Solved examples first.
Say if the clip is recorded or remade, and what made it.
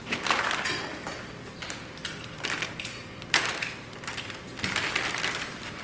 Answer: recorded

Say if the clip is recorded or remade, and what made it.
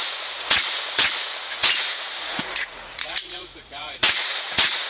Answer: remade, vocoder, Vocos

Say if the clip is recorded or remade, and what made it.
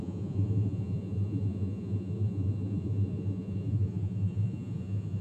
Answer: remade, vocoder, Vocos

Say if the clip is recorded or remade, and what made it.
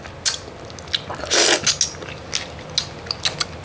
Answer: recorded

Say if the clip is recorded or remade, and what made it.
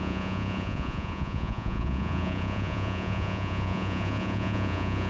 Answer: remade, vocoder, Vocos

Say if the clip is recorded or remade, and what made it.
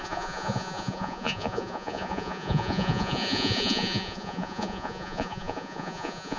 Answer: remade, vocoder, Vocos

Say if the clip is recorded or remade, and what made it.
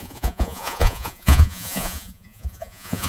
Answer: remade, vocoder, Vocos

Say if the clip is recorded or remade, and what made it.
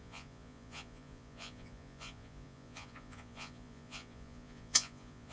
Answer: remade, vocoder, Vocos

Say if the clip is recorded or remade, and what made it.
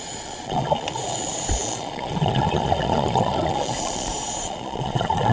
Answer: remade, vocoder, Vocos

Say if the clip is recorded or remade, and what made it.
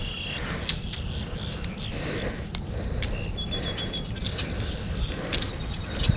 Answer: recorded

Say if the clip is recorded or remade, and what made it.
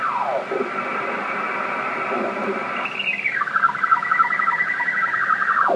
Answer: recorded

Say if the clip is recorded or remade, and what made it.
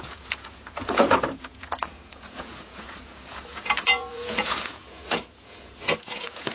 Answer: remade, vocoder, Vocos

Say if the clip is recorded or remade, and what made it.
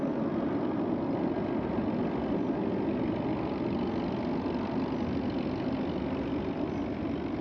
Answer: recorded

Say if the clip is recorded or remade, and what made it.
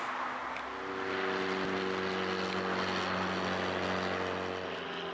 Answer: recorded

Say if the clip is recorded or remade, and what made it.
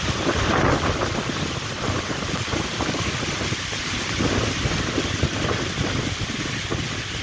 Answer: recorded